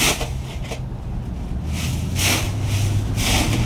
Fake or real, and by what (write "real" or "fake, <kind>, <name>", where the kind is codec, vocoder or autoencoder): real